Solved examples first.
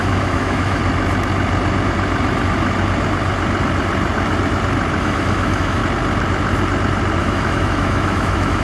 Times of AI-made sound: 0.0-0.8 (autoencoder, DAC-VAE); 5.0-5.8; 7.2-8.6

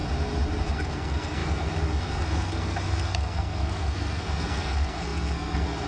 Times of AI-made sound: 0.7-5.9 (codec, SNAC)